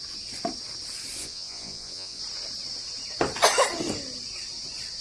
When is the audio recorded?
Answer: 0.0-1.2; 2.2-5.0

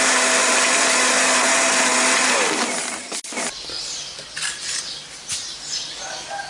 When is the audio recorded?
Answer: 0.0-6.5

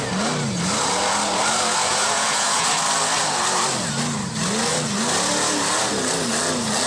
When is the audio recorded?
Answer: 0.0-1.9; 2.7-6.9

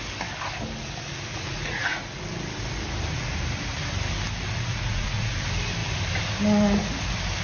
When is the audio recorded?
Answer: 0.0-1.3; 2.2-4.7; 5.3-7.4

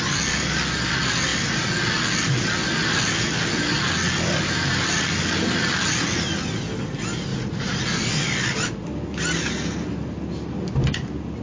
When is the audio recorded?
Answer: 0.0-7.3; 7.8-11.4

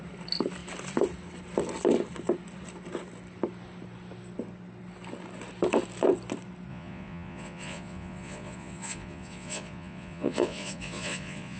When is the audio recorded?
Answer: 0.0-6.7

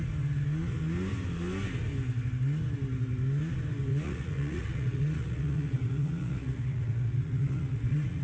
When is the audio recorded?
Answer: 0.0-3.9